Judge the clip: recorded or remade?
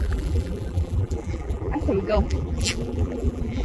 remade